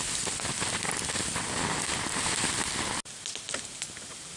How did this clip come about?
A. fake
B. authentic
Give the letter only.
B